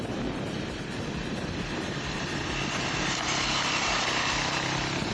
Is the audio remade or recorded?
remade